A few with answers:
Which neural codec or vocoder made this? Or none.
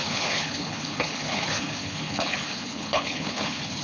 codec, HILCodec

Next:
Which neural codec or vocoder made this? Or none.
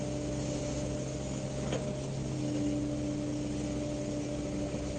none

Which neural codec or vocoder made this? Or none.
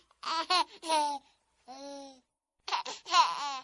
none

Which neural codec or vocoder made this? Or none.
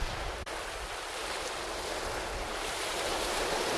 none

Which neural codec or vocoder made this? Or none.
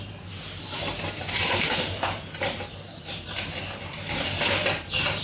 none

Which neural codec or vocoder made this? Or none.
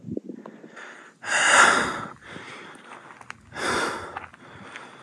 none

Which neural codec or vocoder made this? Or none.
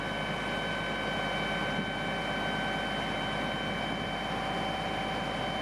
none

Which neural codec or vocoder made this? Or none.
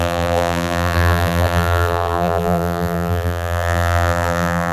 vocoder, BigVGAN v2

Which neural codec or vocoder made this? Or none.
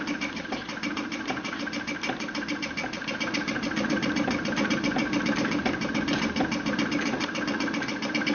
none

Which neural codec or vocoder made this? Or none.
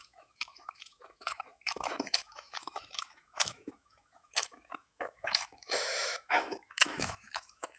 autoencoder, DAC-VAE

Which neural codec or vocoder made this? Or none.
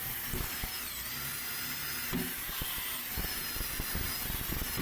none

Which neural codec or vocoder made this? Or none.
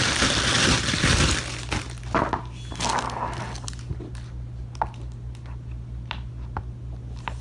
none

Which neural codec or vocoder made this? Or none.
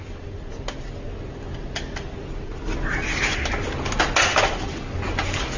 none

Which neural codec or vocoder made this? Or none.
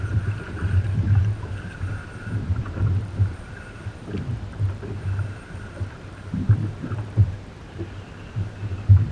vocoder, BigVGAN v2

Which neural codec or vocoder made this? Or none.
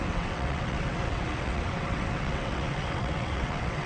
vocoder, WaveNeXt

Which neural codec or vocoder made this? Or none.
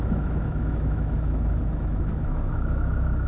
autoencoder, DAC-VAE